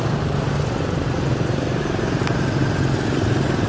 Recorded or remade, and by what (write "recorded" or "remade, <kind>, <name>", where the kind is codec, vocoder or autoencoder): recorded